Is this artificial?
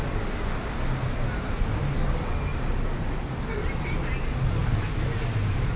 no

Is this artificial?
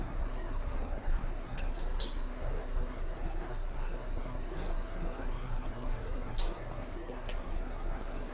yes